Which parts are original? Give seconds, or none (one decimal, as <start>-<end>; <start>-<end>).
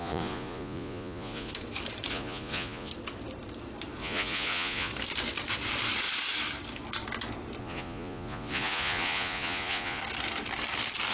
1.5-2.1; 2.9-4.0; 4.9-7.6; 10.0-11.1